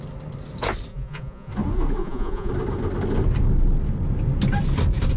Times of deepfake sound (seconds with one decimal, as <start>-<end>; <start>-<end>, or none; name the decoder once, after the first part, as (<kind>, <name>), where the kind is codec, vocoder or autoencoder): 0.9-1.5 (vocoder, Vocos); 2.0-2.5

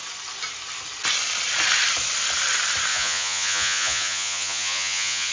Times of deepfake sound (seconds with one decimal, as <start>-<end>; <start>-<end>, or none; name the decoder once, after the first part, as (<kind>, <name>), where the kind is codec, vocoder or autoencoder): 2.9-5.3 (vocoder, Vocos)

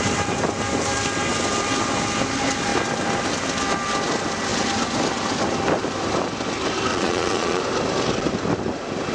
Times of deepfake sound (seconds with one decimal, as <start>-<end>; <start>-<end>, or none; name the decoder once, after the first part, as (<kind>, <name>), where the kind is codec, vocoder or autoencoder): 6.9-7.6 (vocoder, Vocos)

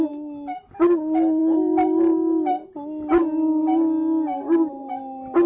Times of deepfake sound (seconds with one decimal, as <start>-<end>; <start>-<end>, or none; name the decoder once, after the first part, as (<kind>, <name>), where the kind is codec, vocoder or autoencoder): none

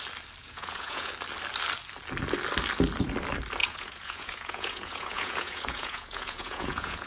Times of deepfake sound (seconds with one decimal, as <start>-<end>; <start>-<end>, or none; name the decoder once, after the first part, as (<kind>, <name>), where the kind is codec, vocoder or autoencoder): 0.4-1.1 (vocoder, Vocos); 3.6-7.1

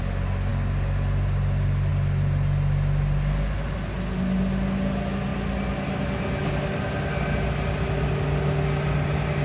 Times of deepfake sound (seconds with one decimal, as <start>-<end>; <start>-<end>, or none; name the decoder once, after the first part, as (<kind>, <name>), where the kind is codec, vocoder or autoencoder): none